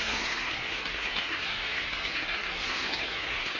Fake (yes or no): yes